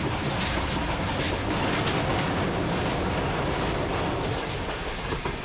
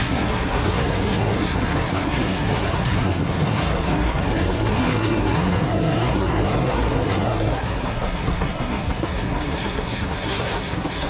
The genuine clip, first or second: first